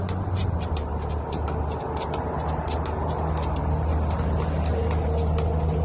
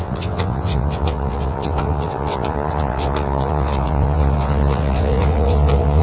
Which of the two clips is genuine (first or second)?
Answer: first